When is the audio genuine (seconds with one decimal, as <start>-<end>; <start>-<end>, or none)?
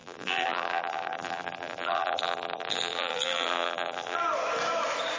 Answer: 4.2-5.2